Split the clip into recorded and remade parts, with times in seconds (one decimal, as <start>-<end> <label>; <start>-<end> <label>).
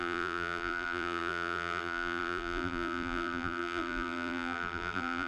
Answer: 0.0-5.3 remade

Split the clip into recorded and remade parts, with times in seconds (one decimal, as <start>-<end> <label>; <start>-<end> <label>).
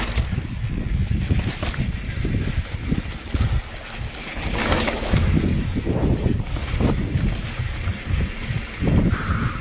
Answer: 0.0-4.6 recorded; 4.6-5.4 remade; 5.4-9.6 recorded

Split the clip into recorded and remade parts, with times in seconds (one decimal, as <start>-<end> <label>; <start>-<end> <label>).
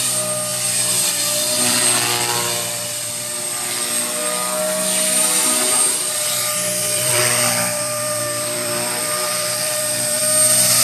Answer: 0.0-6.8 recorded; 6.8-10.2 remade; 10.2-10.8 recorded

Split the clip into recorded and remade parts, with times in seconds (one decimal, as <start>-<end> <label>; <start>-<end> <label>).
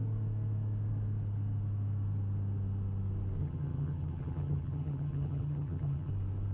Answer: 0.0-3.4 recorded; 3.4-6.1 remade; 6.1-6.5 recorded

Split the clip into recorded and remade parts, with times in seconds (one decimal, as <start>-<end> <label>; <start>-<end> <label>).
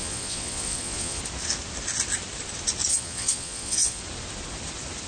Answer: 0.0-1.2 remade; 1.2-2.9 recorded; 2.9-4.0 remade; 4.0-5.1 recorded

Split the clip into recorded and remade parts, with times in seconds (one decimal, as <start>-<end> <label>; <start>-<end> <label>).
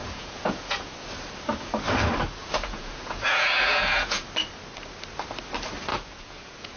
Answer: 0.0-0.9 remade; 0.9-2.4 recorded; 2.4-4.2 remade; 4.2-5.9 recorded; 5.9-6.8 remade